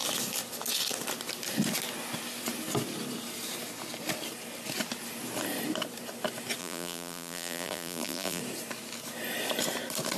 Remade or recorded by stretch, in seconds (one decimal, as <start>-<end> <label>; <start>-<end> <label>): 0.0-6.6 recorded; 6.6-8.4 remade; 8.4-10.2 recorded